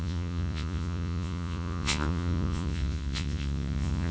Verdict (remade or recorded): remade